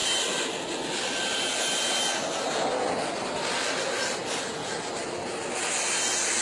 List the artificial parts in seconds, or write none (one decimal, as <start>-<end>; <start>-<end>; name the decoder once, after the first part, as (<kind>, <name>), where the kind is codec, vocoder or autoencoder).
none